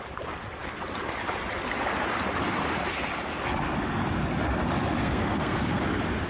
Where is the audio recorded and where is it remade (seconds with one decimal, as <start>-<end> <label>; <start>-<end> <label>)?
0.0-5.0 recorded; 5.0-5.8 remade; 5.8-6.3 recorded